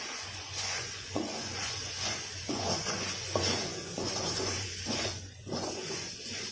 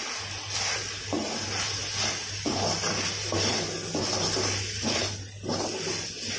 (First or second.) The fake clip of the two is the first